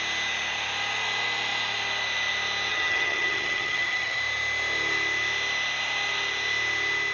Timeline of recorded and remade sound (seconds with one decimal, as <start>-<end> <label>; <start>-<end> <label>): 0.0-2.7 recorded; 2.7-4.2 remade; 4.2-7.1 recorded